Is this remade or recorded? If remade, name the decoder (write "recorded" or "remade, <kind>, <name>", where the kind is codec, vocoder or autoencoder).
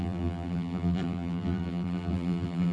remade, vocoder, BigVGAN v2